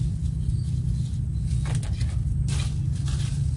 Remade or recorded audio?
recorded